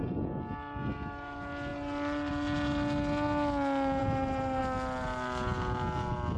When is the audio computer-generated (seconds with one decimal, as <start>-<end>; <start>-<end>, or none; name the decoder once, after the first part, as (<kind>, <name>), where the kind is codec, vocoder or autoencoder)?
4.0-4.6 (vocoder, BigVGAN v2)